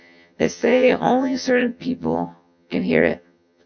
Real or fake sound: fake